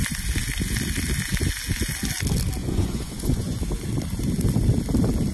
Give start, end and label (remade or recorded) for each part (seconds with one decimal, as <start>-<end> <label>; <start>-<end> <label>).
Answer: 0.0-2.6 recorded; 2.6-3.6 remade; 3.6-5.3 recorded